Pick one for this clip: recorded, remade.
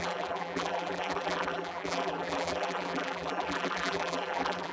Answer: remade